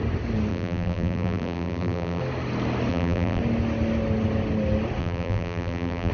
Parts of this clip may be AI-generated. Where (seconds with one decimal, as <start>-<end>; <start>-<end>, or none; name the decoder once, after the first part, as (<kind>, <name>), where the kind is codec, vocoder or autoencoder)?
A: 0.5-2.2 (vocoder, BigVGAN v2); 2.9-3.4; 5.0-6.1